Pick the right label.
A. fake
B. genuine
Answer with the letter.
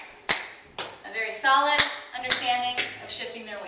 B